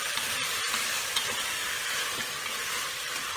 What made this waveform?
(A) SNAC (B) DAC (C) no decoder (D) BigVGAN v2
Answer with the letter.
D